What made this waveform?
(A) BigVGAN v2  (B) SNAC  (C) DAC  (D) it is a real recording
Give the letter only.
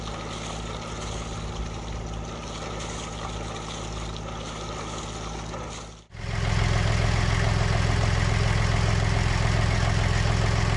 D